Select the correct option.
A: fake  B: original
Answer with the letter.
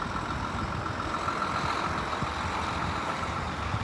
B